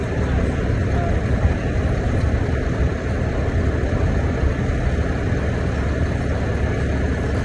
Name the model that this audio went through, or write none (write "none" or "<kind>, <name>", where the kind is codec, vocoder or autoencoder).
none